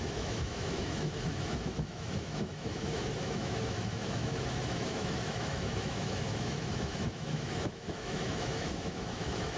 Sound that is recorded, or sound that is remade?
remade